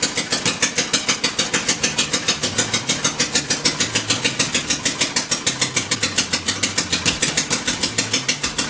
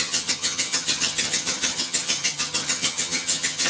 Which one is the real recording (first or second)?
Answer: first